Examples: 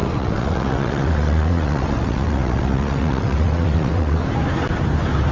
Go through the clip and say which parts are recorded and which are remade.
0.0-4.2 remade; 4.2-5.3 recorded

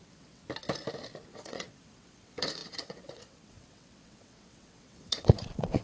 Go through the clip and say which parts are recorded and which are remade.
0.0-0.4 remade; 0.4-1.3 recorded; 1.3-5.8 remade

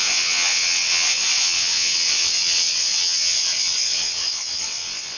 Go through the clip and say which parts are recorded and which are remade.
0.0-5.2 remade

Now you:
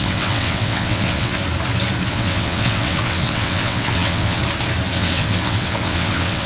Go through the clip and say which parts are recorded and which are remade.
0.0-1.4 remade; 1.4-2.1 recorded; 2.1-4.4 remade; 4.4-4.9 recorded; 4.9-6.5 remade

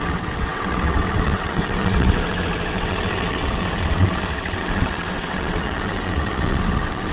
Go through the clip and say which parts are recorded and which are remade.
0.0-7.1 remade

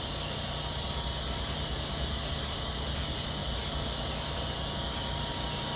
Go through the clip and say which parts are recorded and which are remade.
0.0-5.8 recorded